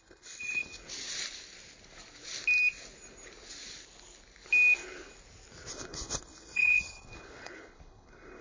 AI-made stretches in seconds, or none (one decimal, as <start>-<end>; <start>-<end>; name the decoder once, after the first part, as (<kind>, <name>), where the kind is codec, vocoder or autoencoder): 0.0-0.8 (codec, HILCodec); 5.7-8.4

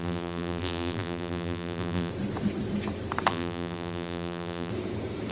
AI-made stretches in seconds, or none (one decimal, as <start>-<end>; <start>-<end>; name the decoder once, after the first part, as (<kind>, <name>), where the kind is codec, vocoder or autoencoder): 0.0-2.1 (vocoder, BigVGAN v2); 3.3-4.7

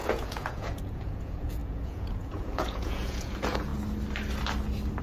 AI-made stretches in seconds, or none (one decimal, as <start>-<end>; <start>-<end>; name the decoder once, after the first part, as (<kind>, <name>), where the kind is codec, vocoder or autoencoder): 0.0-3.7 (vocoder, Vocos)

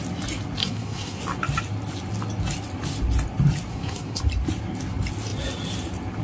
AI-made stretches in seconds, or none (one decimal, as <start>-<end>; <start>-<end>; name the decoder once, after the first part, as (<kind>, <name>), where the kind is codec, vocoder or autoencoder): 0.6-1.2 (codec, SNAC); 3.7-4.2

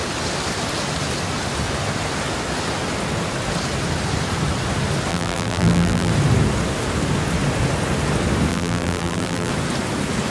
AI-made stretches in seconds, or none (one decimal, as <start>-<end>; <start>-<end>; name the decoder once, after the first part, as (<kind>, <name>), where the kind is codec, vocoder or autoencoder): 5.1-6.1 (vocoder, BigVGAN v2); 8.5-9.5

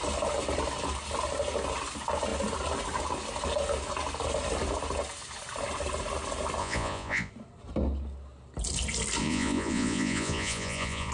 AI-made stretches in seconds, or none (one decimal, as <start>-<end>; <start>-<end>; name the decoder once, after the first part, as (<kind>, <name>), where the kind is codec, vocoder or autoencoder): 6.6-7.3 (vocoder, Vocos); 9.2-11.1

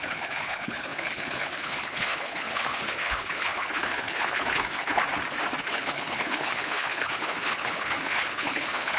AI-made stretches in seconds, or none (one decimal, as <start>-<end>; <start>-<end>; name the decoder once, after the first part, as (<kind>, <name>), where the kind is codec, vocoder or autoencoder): 0.0-5.0 (codec, HILCodec); 5.6-9.0